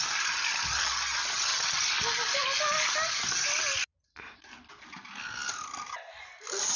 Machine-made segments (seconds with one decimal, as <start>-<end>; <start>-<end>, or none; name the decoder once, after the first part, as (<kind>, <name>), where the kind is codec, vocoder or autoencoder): none